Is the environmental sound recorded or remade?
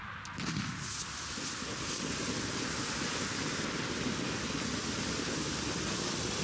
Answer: recorded